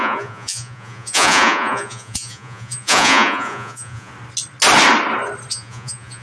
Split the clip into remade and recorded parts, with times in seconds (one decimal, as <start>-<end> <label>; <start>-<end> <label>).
0.0-4.1 remade; 4.1-5.5 recorded; 5.5-6.2 remade